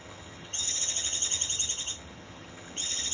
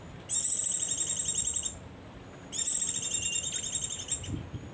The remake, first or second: first